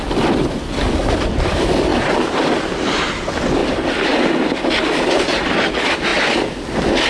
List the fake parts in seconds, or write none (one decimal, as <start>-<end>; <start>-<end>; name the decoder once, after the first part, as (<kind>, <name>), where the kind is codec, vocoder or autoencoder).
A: 1.9-2.5 (vocoder, BigVGAN v2)